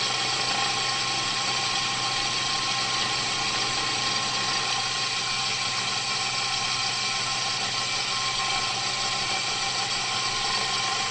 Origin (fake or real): real